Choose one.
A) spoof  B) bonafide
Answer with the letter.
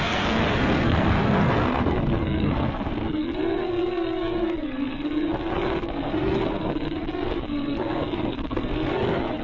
A